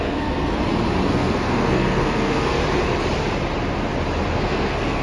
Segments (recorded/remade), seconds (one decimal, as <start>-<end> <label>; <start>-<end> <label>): 0.0-0.6 remade; 0.6-1.1 recorded; 1.1-2.6 remade; 2.6-4.3 recorded; 4.3-5.0 remade

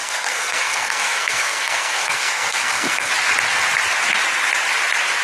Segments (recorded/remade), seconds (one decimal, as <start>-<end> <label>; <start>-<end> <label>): 0.0-3.1 remade; 3.1-5.2 recorded

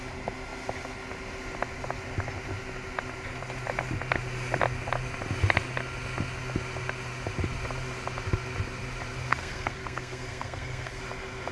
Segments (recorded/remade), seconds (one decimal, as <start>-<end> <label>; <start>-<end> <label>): 0.0-9.3 recorded; 9.3-11.0 remade; 11.0-11.5 recorded

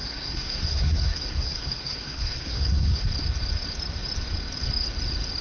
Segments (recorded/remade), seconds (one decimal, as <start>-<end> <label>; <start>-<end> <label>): 0.0-3.0 remade; 3.0-5.4 recorded

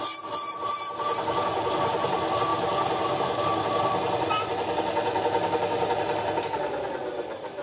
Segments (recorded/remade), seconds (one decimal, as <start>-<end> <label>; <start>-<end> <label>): 0.0-7.6 recorded

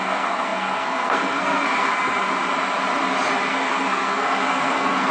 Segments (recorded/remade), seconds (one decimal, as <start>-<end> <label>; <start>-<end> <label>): 0.0-1.9 remade; 1.9-3.5 recorded; 3.5-5.1 remade

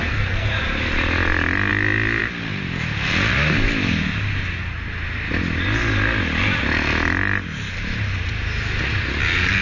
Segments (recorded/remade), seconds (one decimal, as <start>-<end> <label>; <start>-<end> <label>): 0.0-0.6 remade; 0.6-9.6 recorded